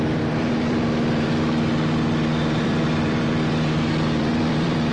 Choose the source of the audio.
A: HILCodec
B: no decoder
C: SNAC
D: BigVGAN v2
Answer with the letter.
D